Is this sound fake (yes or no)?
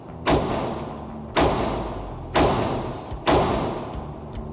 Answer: no